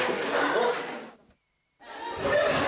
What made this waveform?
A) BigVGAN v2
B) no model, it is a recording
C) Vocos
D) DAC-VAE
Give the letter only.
B